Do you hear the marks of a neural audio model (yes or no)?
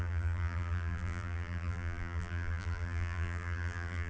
yes